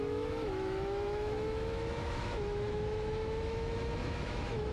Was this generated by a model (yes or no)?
yes